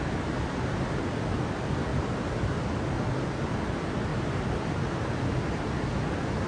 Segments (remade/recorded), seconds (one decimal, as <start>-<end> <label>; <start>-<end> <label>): 0.0-1.9 recorded; 1.9-2.5 remade; 2.5-4.1 recorded; 4.1-5.3 remade; 5.3-6.5 recorded